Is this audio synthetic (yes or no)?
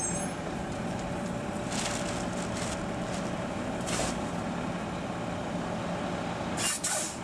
no